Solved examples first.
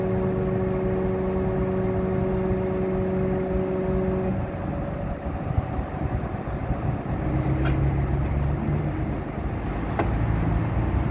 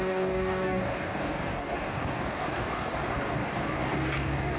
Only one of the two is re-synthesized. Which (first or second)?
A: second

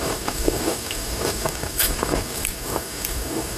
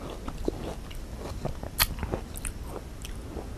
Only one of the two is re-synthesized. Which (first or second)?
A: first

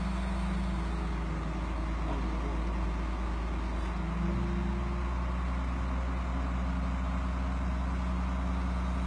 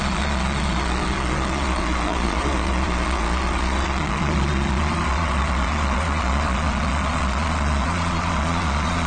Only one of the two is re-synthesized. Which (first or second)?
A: second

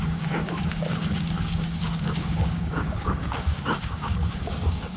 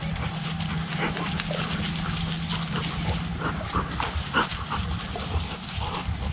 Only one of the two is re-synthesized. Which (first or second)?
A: first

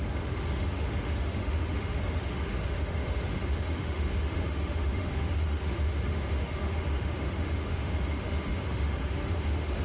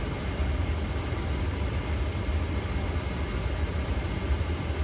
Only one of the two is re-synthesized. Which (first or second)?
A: first